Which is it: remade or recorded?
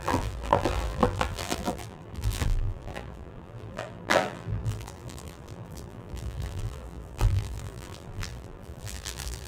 remade